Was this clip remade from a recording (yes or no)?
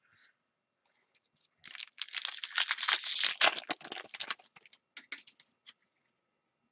no